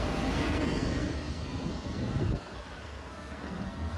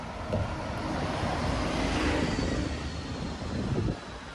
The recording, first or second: second